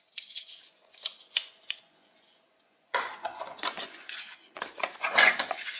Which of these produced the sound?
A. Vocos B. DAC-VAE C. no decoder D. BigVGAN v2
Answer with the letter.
A